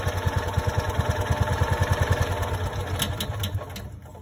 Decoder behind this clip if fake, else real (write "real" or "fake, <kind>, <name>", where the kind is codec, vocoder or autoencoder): real